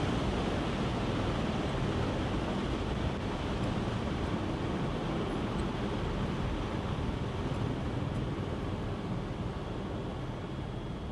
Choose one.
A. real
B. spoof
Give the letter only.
A